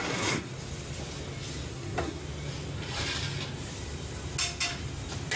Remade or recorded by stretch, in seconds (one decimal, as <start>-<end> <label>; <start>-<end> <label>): 0.0-0.5 remade; 0.5-1.7 recorded; 1.7-2.2 remade; 2.2-5.4 recorded